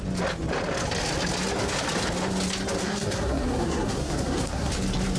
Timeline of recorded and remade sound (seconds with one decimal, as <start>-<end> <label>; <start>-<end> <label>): 0.0-2.8 recorded; 2.8-4.7 remade; 4.7-5.2 recorded